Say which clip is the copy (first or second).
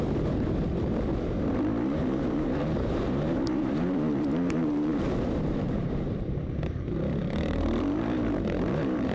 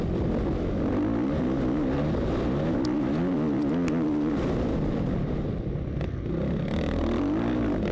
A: first